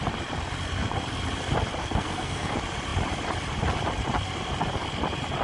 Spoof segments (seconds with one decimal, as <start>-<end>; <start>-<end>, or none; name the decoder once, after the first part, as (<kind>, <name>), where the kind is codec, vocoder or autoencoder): 1.8-2.5 (codec, SNAC)